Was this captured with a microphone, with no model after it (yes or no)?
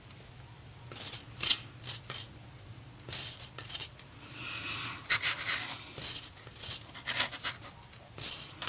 yes